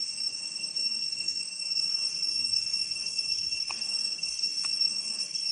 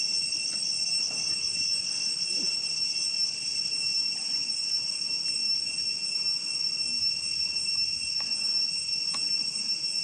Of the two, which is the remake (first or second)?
first